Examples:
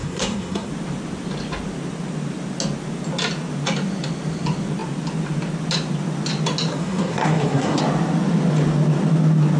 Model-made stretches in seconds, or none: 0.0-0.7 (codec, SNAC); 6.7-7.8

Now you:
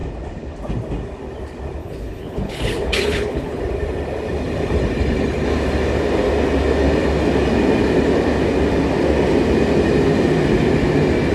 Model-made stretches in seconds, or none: 1.8-3.6 (codec, HILCodec)